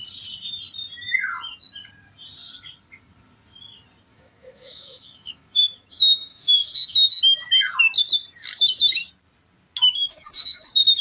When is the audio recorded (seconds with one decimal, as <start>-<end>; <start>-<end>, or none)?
0.0-4.1; 7.2-9.8